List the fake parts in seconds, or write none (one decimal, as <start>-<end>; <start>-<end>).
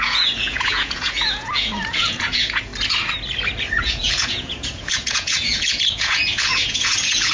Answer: 0.0-2.7; 3.7-7.3